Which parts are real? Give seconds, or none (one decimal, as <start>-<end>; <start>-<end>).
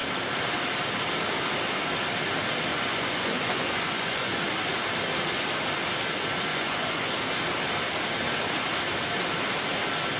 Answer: 0.0-2.7; 4.4-6.5; 7.1-10.2